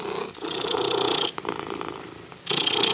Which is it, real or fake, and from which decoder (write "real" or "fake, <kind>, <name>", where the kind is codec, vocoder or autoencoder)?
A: real